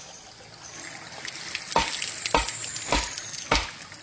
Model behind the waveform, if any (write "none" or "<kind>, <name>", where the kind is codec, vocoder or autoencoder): none